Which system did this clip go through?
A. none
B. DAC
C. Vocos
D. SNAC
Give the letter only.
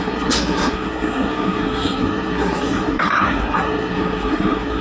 D